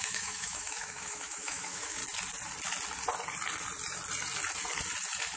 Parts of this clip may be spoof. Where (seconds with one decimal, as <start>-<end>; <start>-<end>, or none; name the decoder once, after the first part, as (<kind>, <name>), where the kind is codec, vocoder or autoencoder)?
0.0-2.0 (autoencoder, DAC-VAE)